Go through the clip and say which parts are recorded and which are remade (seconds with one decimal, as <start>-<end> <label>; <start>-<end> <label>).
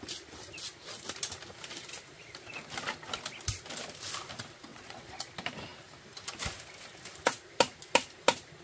0.0-4.7 recorded; 4.7-5.3 remade; 5.3-8.6 recorded